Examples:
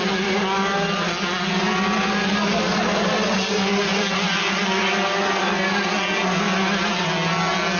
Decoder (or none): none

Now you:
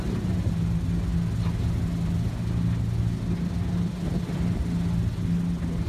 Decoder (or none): none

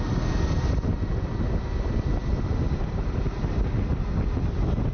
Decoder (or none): none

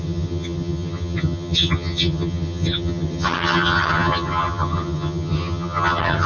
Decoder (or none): vocoder, HiFi-GAN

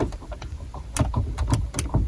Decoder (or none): none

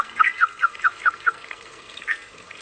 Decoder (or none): codec, SNAC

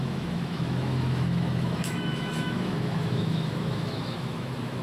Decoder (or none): autoencoder, DAC-VAE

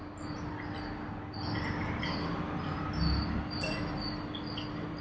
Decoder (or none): none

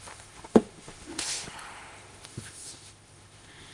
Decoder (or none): autoencoder, DAC-VAE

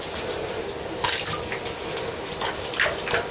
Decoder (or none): none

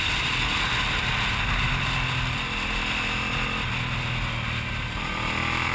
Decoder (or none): none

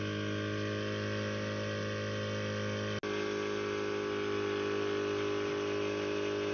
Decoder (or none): none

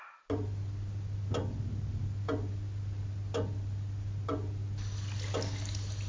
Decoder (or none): none